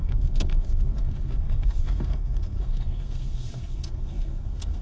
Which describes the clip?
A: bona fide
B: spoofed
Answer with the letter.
B